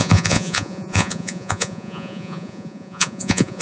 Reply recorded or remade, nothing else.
remade